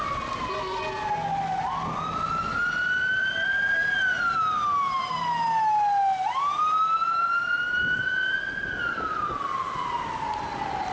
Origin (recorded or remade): recorded